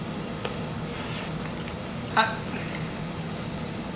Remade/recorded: recorded